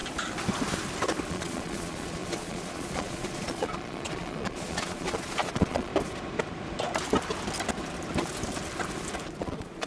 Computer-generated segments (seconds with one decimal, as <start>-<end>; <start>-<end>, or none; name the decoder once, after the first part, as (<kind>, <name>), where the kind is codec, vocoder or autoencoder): 1.3-5.9 (vocoder, Vocos); 9.4-9.9